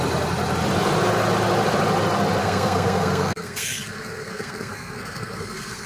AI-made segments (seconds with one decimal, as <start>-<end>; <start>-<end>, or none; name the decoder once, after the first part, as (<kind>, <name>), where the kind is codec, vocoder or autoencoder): 2.4-5.9 (codec, SNAC)